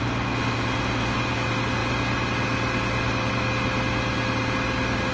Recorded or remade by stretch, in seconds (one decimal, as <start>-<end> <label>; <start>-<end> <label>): 0.0-5.1 recorded